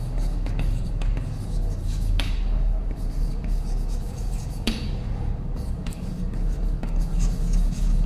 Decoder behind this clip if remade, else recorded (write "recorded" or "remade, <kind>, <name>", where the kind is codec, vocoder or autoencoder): remade, codec, DAC